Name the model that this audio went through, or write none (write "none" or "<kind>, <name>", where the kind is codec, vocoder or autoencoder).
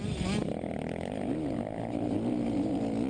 none